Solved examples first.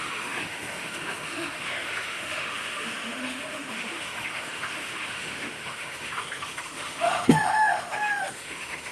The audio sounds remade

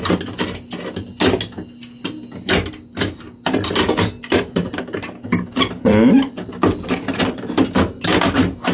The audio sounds recorded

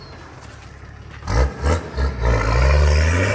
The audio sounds recorded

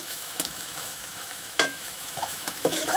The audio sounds remade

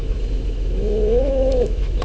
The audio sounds remade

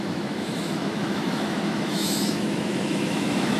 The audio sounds remade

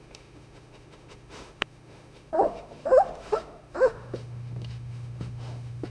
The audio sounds remade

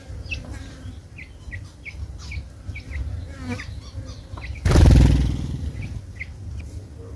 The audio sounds recorded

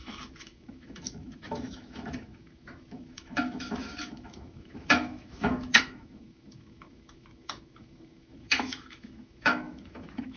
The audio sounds remade